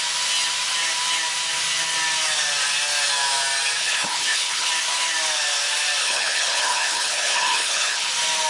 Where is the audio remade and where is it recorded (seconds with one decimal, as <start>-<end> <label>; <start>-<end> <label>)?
0.0-3.8 recorded; 3.8-4.7 remade; 4.7-6.0 recorded; 6.0-8.1 remade; 8.1-8.5 recorded

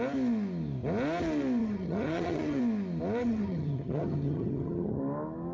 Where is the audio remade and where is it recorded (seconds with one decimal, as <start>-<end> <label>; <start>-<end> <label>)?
0.0-1.6 recorded; 1.6-2.6 remade; 2.6-3.2 recorded; 3.2-5.0 remade; 5.0-5.5 recorded

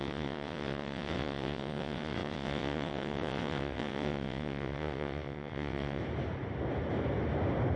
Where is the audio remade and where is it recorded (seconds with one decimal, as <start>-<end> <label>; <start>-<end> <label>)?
0.0-6.0 remade; 6.0-7.8 recorded

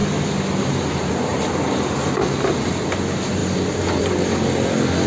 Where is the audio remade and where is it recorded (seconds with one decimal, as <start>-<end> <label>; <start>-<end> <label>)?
0.0-1.3 recorded; 1.3-2.5 remade; 2.5-5.1 recorded

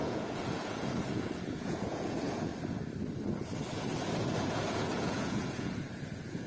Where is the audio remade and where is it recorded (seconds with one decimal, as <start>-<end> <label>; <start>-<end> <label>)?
0.0-2.5 remade; 2.5-4.4 recorded; 4.4-6.5 remade

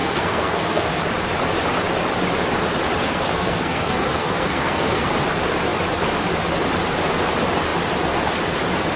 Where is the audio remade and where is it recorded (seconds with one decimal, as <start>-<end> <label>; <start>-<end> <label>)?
0.0-1.0 remade; 1.0-3.0 recorded; 3.0-5.1 remade; 5.1-9.0 recorded

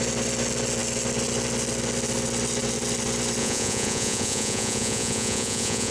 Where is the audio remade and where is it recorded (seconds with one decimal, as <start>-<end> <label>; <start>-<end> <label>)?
0.0-3.4 recorded; 3.4-5.9 remade